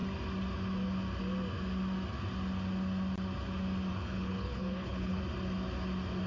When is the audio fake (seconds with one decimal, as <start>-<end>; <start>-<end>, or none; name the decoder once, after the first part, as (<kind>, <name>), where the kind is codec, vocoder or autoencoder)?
3.9-5.2 (codec, HILCodec)